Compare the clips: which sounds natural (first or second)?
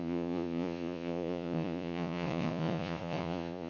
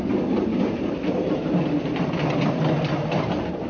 second